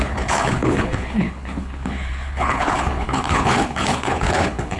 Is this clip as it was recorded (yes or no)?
no